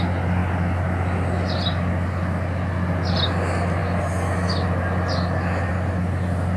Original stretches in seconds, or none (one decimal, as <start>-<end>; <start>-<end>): 0.0-6.6